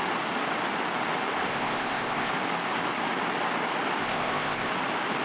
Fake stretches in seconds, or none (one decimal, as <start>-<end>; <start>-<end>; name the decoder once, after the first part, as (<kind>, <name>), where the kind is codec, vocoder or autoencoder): 1.5-2.3 (codec, ZipCodec); 4.0-4.7